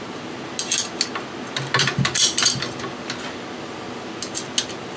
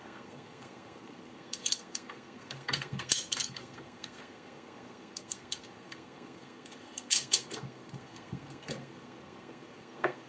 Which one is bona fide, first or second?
first